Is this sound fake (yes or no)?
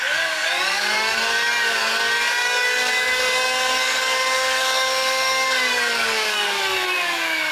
yes